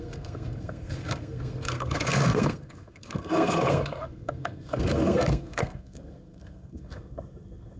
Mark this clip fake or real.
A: fake